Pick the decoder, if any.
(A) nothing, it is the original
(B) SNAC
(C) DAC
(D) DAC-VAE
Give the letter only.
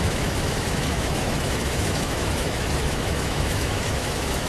D